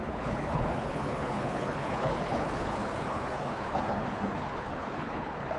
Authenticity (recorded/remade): remade